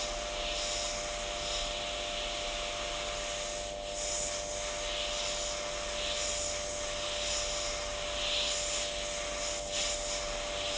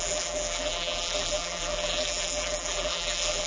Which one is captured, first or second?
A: first